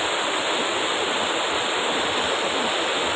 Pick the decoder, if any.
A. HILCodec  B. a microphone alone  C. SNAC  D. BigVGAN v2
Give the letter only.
B